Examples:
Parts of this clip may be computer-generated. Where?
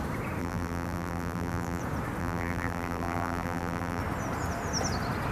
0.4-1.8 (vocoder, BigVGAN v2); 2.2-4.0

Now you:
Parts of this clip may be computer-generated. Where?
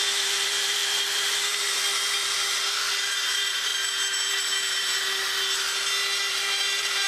0.0-3.7 (vocoder, BigVGAN v2); 4.3-4.9; 6.3-7.1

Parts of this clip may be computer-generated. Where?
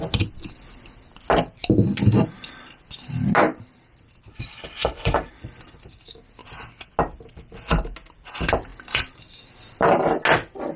4.3-5.3 (codec, HILCodec)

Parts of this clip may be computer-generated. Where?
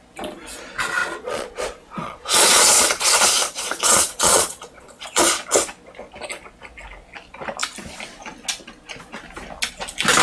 1.0-5.2 (vocoder, Vocos)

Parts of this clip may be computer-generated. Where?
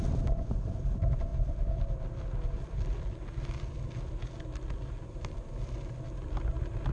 none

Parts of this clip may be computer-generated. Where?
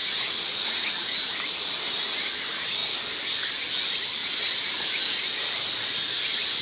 0.0-0.9 (vocoder, Vocos)